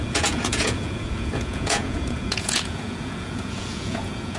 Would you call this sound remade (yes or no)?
yes